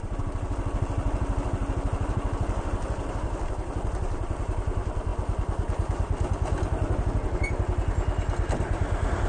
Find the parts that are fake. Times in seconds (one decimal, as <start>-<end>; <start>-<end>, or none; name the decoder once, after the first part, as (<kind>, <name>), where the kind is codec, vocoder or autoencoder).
none